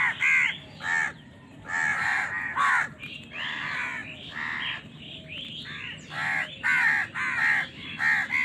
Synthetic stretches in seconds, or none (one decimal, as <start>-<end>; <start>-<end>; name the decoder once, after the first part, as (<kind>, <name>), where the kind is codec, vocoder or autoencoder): 1.9-2.7 (vocoder, BigVGAN v2)